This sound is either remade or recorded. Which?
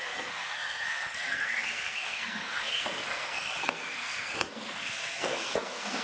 remade